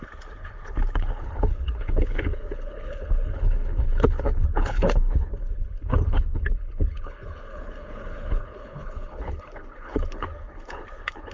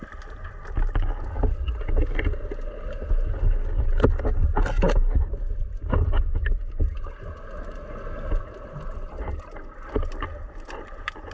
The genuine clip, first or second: second